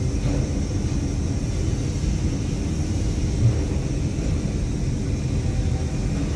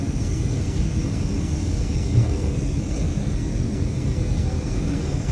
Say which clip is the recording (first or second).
first